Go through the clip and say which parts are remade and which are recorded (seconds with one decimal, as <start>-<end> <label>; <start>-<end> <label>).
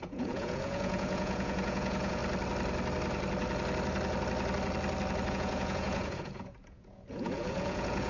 0.0-2.2 remade; 2.2-5.3 recorded; 5.3-8.1 remade